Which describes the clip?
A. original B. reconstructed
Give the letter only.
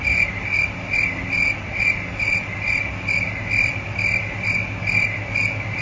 A